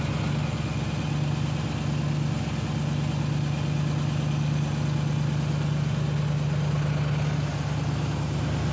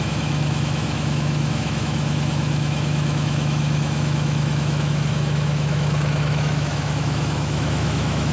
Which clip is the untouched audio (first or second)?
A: first